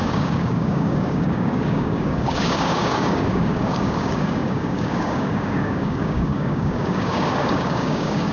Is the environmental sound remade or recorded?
remade